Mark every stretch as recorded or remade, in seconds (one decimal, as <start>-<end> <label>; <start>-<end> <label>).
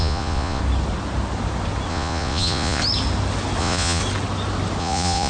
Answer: 0.0-0.6 remade; 0.6-1.9 recorded; 1.9-2.8 remade; 2.8-3.6 recorded; 3.6-4.0 remade; 4.0-4.8 recorded; 4.8-5.3 remade